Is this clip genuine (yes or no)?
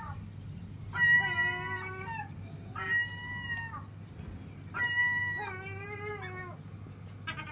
yes